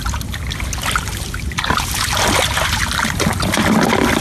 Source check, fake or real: real